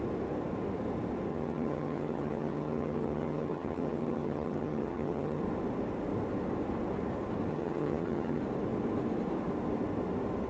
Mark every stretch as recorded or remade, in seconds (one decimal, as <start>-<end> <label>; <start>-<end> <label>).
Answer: 0.0-1.3 recorded; 1.3-5.4 remade; 5.4-7.5 recorded; 7.5-8.4 remade; 8.4-10.5 recorded